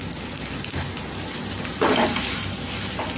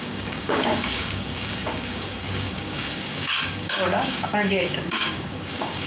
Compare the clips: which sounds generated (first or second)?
second